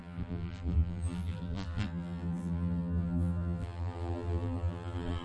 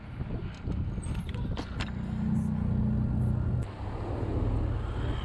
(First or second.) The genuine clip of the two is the second